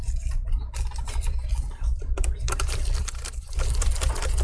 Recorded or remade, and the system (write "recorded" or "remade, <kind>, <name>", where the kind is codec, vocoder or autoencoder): remade, vocoder, BigVGAN v2